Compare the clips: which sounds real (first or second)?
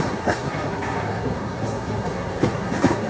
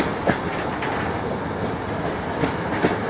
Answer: second